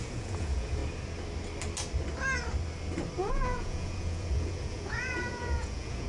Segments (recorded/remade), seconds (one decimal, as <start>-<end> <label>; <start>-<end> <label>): 0.0-0.8 remade; 0.8-3.2 recorded; 3.2-6.1 remade